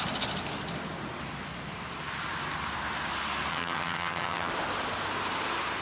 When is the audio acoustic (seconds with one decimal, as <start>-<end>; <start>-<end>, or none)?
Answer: 0.0-3.5; 4.5-5.8